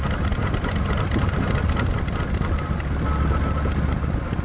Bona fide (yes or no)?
yes